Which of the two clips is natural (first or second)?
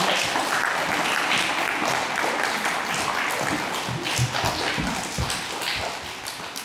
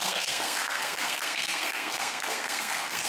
first